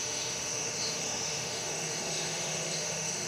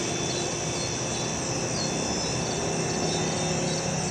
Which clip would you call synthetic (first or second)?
first